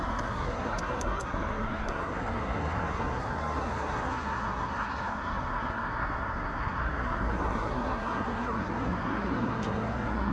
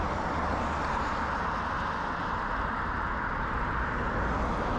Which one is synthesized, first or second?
first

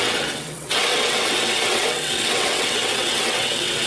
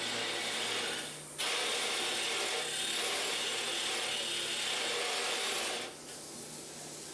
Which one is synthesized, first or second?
first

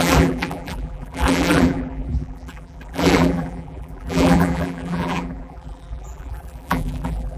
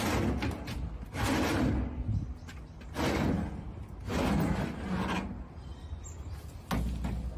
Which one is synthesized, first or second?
first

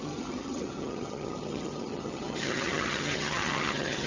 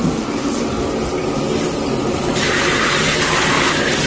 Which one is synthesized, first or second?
first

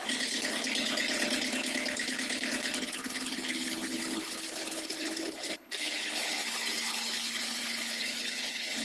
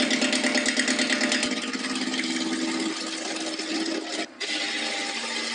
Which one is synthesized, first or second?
first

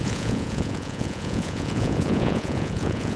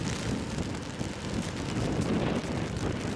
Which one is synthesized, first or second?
first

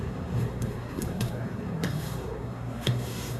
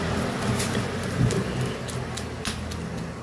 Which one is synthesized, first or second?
first